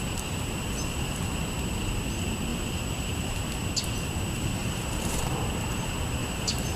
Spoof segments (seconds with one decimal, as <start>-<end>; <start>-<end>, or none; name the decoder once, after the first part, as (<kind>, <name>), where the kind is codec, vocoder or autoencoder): 2.5-3.5 (vocoder, BigVGAN v2); 4.6-5.2; 6.2-6.8